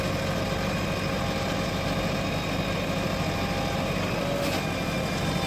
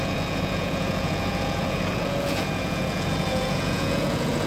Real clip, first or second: first